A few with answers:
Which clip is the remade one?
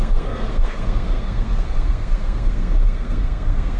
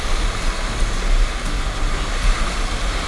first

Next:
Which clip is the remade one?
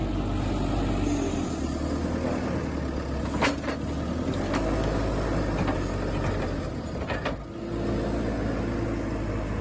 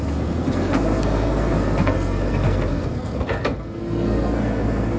second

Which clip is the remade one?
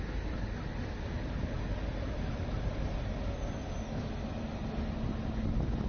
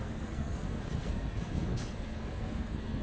second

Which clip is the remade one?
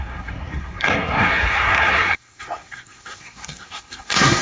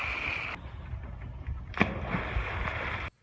first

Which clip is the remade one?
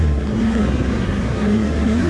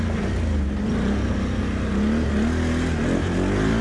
first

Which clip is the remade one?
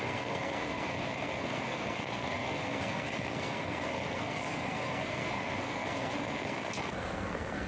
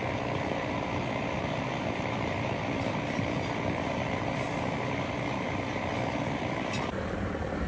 first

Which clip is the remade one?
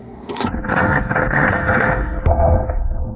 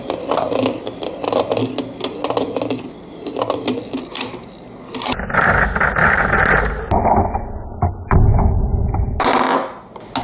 first